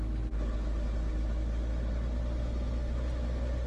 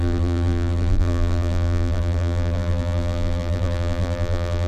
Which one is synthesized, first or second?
second